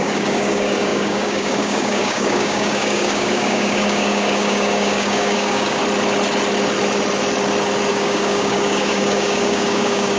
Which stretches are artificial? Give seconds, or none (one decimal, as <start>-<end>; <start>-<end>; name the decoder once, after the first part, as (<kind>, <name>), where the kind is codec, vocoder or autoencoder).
0.0-5.8 (codec, DAC); 7.9-10.2